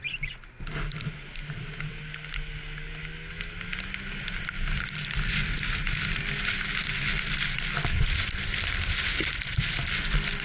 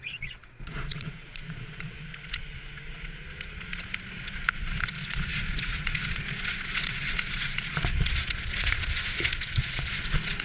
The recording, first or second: first